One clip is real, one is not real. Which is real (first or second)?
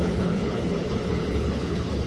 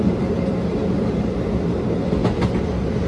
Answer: second